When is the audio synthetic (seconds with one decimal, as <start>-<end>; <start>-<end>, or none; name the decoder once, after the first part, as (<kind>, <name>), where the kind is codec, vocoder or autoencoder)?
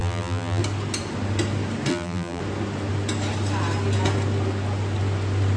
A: 0.0-0.6 (vocoder, BigVGAN v2); 1.9-2.4